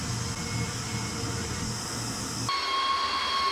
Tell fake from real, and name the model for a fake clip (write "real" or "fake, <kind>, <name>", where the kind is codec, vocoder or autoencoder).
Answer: real